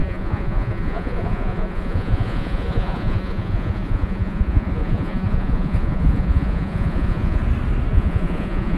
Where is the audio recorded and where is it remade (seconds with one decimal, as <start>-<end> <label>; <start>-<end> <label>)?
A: 0.0-7.4 remade; 7.4-7.9 recorded; 7.9-8.8 remade